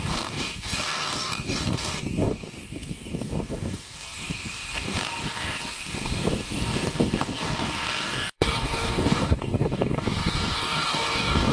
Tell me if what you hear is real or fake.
fake